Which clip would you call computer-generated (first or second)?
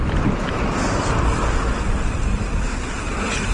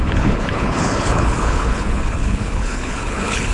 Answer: second